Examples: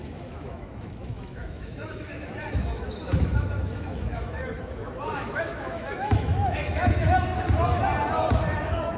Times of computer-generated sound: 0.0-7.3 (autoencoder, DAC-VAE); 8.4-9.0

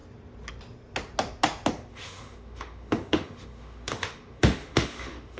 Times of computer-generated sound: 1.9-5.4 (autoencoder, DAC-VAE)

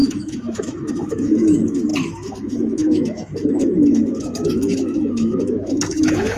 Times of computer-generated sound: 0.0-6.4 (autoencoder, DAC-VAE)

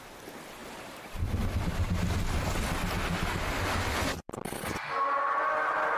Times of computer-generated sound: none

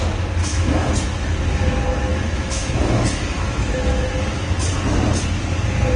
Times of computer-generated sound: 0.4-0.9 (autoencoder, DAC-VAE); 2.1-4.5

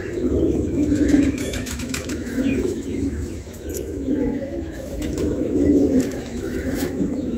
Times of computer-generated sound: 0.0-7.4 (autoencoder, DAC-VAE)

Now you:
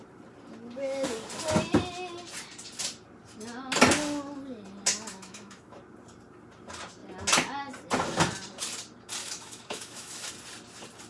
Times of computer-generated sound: 5.1-5.8 (autoencoder, DAC-VAE); 9.2-10.3